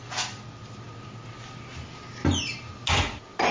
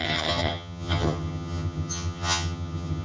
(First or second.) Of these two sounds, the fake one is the second